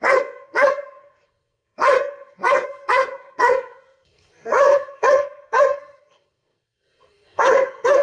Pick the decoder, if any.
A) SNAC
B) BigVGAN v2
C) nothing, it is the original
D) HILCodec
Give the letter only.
A